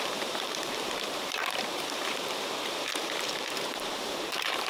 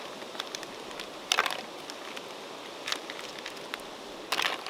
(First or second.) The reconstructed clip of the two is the first